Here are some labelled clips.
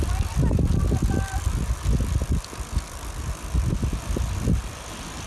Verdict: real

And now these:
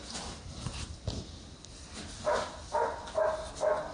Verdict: real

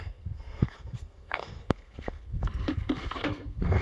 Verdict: fake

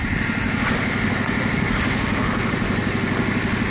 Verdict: real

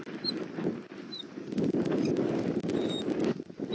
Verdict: real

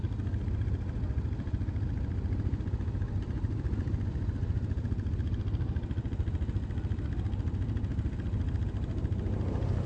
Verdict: real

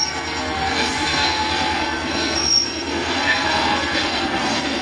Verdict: fake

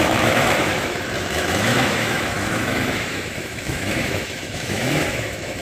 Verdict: fake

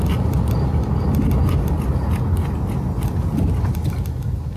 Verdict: real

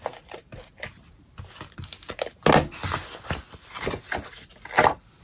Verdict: real